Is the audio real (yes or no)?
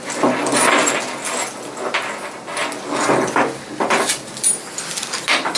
yes